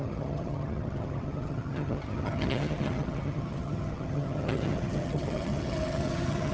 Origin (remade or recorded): remade